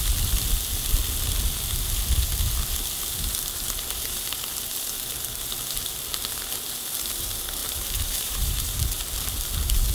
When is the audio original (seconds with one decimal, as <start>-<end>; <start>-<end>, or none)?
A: 0.0-7.6; 9.0-9.9